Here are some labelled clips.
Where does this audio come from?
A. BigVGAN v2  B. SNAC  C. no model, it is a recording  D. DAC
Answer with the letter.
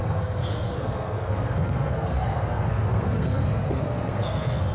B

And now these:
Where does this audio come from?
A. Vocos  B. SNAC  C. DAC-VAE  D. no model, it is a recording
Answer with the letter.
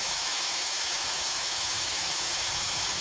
C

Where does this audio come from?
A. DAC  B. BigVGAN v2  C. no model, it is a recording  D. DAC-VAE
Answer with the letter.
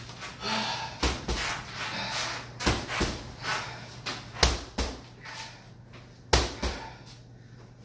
C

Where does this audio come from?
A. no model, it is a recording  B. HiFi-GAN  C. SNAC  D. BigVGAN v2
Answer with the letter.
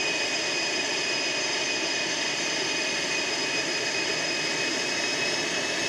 A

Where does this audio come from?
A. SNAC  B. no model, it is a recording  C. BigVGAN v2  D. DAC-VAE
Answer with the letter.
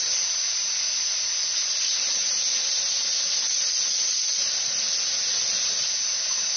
B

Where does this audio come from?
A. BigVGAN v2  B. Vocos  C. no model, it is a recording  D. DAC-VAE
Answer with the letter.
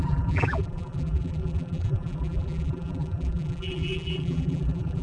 A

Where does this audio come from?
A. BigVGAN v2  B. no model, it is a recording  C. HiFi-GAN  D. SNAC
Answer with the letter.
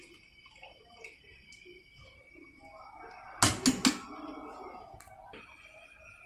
B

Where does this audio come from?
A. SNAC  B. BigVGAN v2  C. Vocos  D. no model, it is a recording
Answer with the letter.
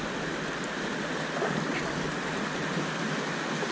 D